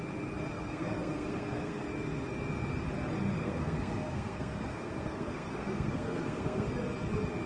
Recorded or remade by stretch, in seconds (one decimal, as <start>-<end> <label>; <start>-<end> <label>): 0.0-0.5 recorded; 0.5-1.8 remade; 1.8-3.4 recorded; 3.4-6.7 remade; 6.7-7.5 recorded